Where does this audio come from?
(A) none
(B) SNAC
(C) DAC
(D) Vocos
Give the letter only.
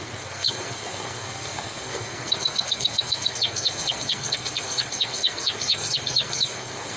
B